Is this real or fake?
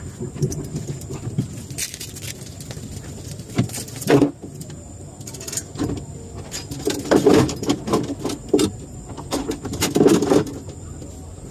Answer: real